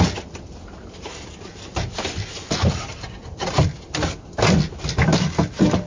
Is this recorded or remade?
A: recorded